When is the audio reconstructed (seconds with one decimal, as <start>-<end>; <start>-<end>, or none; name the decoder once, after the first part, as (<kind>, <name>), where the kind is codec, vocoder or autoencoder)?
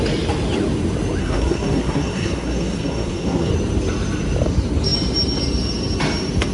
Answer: 1.2-3.5 (codec, SNAC)